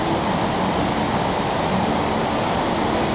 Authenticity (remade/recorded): recorded